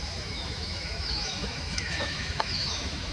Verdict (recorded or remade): remade